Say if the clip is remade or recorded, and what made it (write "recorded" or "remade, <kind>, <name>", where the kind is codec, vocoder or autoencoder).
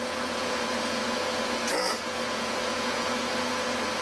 remade, vocoder, Vocos